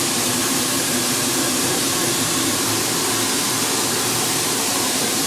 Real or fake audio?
fake